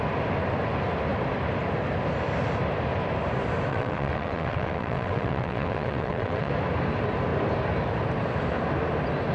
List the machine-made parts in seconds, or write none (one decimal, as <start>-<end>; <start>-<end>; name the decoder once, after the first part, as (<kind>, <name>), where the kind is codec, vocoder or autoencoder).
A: 3.7-6.5 (vocoder, WaveNeXt)

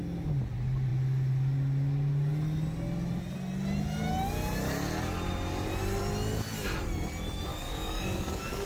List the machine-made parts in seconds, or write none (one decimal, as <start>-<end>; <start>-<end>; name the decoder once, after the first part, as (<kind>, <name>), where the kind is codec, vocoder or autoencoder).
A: 7.5-8.7 (codec, DAC)

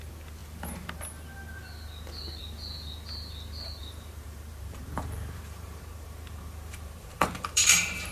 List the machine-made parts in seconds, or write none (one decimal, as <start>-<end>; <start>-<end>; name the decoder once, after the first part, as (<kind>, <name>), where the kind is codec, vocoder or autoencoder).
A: 3.8-8.1 (vocoder, BigVGAN v2)